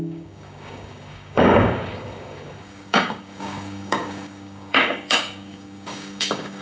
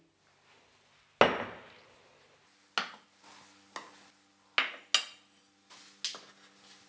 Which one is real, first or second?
second